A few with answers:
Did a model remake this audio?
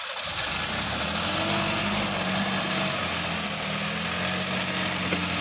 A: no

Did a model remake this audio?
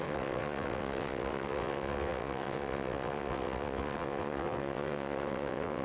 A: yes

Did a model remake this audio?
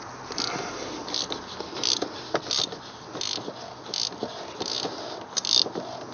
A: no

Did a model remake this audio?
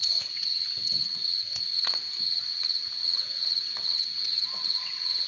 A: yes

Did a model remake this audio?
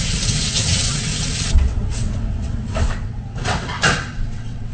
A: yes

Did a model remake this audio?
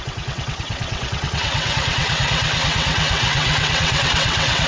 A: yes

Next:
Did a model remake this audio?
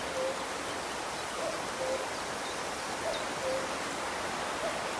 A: no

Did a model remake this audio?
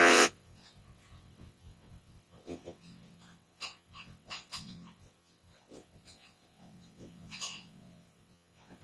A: yes